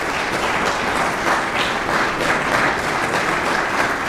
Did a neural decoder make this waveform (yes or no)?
no